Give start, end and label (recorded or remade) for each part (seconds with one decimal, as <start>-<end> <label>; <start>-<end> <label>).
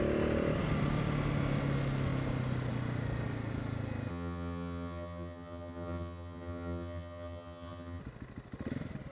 0.0-4.1 recorded; 4.1-8.0 remade; 8.0-9.1 recorded